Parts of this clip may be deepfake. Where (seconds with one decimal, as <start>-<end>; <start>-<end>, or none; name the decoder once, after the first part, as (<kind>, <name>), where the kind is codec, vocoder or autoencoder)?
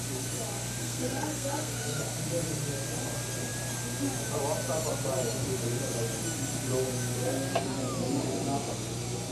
0.8-2.0 (codec, SNAC)